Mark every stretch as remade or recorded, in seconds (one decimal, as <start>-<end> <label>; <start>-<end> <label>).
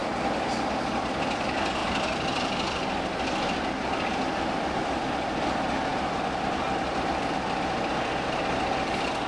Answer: 0.0-9.3 recorded